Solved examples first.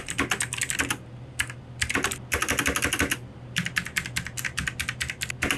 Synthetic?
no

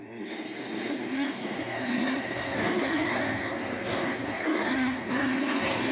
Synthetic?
yes